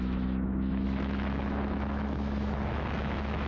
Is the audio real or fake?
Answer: fake